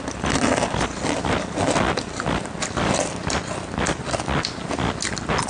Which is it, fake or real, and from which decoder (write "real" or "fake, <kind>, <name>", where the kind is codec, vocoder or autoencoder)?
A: real